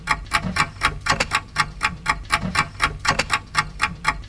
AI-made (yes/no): no